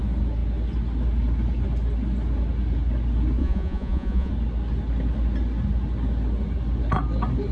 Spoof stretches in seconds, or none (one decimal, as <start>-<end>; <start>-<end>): 3.4-4.3